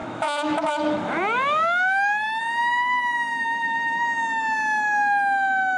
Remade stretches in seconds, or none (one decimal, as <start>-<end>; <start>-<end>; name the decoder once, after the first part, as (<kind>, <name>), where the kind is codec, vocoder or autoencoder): 0.0-2.4 (autoencoder, DAC-VAE); 3.3-4.0